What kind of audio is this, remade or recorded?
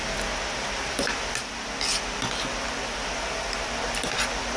recorded